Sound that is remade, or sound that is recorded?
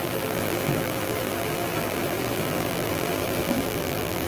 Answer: remade